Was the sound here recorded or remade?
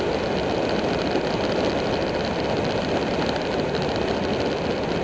recorded